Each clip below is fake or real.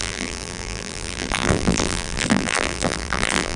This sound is fake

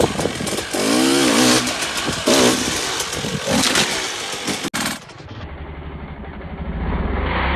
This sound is real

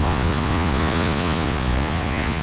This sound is fake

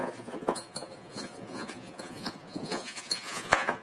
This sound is fake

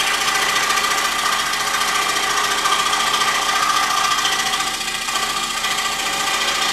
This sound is real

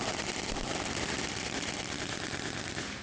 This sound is fake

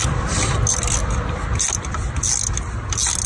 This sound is real